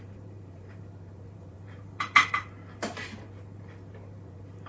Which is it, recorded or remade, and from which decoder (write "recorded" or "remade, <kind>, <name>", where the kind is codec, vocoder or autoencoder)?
remade, vocoder, BigVGAN v2